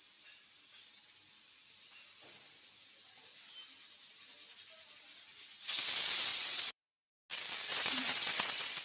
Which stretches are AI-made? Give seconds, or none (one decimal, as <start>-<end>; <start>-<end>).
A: 6.3-7.1; 7.7-8.8